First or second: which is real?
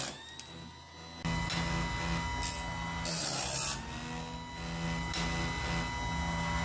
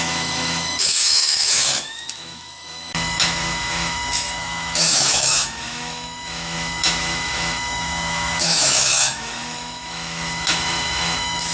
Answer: first